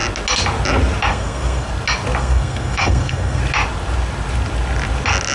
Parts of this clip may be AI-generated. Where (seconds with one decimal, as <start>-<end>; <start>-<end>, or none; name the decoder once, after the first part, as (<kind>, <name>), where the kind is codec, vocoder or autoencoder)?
1.1-1.7 (codec, SNAC); 2.2-3.4

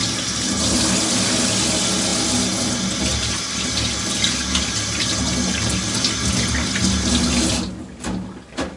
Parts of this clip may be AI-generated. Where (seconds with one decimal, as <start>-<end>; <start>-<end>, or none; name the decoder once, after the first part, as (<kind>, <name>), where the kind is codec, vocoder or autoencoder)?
none

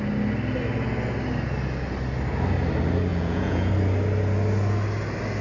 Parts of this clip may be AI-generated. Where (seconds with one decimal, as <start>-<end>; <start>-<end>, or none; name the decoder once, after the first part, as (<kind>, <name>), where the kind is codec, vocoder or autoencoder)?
3.1-3.7 (vocoder, Vocos)

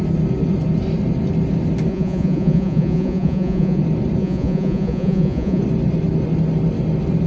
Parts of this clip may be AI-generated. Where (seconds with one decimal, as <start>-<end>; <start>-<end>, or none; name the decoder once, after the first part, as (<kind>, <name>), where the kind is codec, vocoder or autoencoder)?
1.9-3.8 (vocoder, Vocos); 4.2-5.6

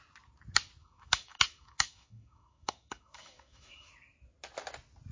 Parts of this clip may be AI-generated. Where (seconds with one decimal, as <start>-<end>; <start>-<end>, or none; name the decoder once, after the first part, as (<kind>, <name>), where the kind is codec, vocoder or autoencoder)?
0.8-3.9 (autoencoder, DAC-VAE)

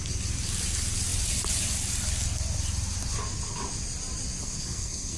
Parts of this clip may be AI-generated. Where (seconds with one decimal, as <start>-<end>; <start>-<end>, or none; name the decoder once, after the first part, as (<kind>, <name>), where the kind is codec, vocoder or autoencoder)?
4.4-5.2 (codec, SNAC)